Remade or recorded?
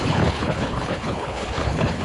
remade